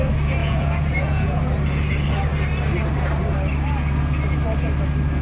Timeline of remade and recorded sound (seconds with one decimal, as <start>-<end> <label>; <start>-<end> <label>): 0.0-0.4 recorded; 0.4-1.4 remade; 1.4-5.2 recorded